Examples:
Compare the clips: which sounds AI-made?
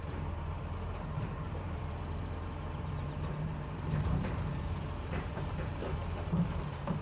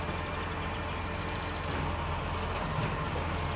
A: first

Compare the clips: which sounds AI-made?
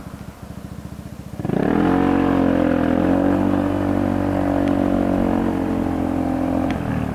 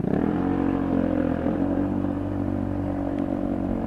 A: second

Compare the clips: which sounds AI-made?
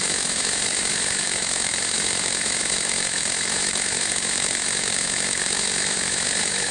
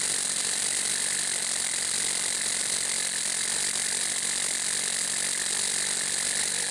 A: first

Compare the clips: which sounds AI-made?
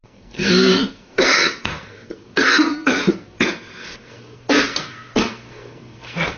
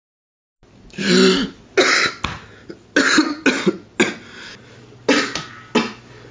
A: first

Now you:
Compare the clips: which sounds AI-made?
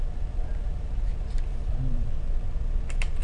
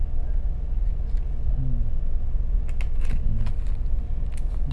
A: first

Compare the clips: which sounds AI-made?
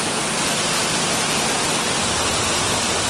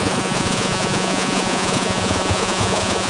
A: second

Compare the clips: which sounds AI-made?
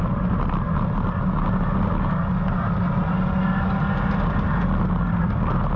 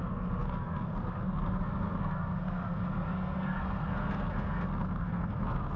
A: second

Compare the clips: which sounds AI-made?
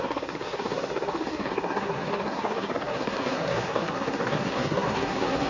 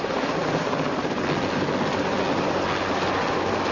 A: first